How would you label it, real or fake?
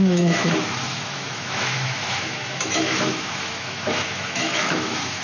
fake